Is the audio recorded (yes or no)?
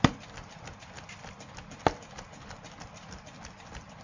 yes